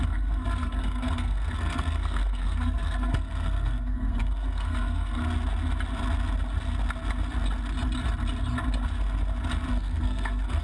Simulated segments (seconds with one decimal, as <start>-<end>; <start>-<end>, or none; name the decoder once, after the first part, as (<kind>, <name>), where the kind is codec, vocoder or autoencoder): 0.0-5.2 (codec, SNAC); 9.7-10.6